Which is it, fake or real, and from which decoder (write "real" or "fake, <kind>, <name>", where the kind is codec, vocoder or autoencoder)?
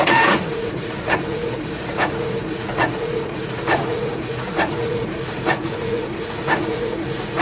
fake, vocoder, Vocos